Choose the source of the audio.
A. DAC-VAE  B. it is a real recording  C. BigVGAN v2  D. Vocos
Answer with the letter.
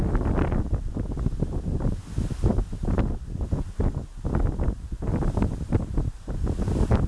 B